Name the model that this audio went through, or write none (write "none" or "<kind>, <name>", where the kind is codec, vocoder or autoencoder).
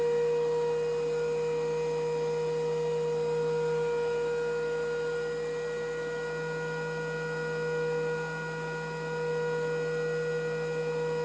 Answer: none